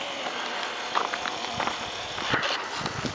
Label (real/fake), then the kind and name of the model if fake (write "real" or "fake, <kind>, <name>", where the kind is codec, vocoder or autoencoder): real